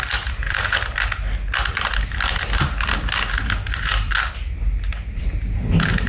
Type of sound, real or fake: real